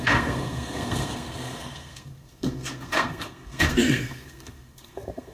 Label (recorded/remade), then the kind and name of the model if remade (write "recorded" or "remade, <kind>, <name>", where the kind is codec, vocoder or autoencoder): remade, codec, SNAC